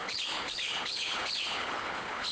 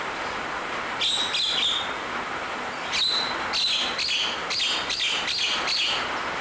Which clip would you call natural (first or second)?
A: second